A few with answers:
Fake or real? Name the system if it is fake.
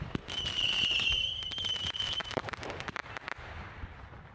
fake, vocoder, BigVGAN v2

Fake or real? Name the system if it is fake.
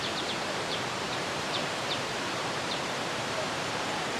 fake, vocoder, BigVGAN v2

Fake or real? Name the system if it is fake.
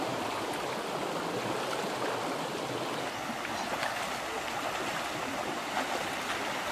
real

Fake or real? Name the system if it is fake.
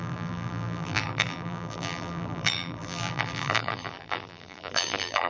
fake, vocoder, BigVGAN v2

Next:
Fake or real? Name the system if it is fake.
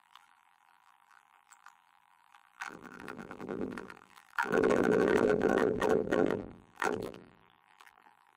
fake, vocoder, BigVGAN v2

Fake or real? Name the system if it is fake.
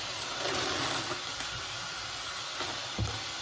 real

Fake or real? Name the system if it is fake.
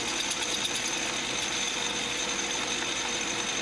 real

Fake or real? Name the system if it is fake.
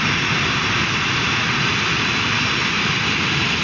fake, vocoder, BigVGAN v2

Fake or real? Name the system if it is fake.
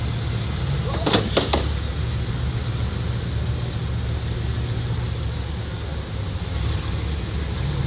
real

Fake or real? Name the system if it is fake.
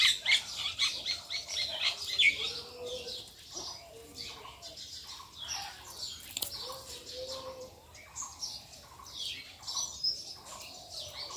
real